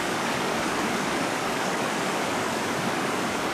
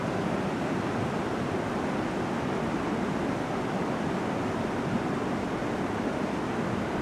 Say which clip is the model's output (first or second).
first